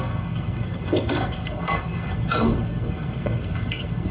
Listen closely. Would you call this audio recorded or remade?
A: remade